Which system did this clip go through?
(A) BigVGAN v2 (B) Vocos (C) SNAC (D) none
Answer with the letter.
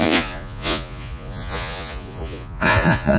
B